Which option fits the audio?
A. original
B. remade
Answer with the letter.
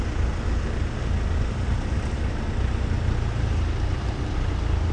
A